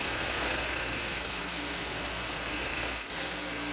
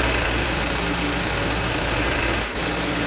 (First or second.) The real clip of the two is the second